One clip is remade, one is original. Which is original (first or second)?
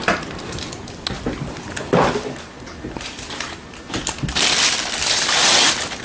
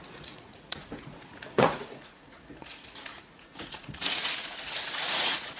first